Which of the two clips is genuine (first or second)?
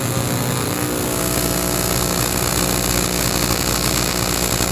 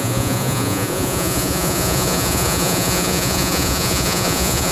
first